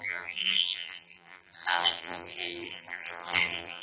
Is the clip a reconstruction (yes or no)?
yes